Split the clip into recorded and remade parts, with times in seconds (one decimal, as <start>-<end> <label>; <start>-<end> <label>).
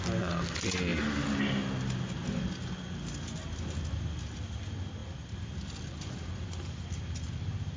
0.0-7.8 recorded